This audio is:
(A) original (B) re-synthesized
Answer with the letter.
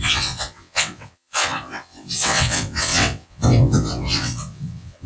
B